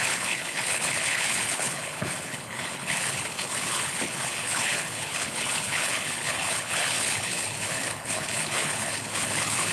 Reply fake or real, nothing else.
fake